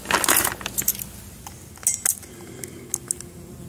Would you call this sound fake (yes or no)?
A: no